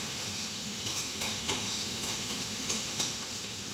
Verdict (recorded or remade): remade